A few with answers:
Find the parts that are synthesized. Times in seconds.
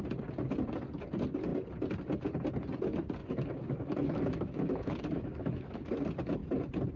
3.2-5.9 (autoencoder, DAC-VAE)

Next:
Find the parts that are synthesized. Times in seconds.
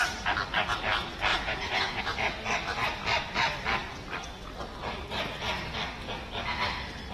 1.3-2.0 (vocoder, Vocos)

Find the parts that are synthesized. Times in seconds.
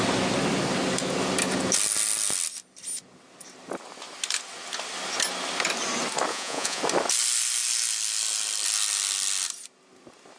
6.3-6.8 (vocoder, Vocos)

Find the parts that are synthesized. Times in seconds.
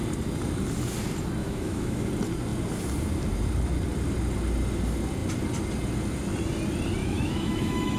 1.4-2.1 (autoencoder, DAC-VAE); 7.0-8.0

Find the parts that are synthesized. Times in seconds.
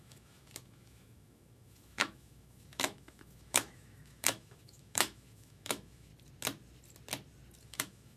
0.0-6.1 (autoencoder, DAC-VAE); 7.6-8.2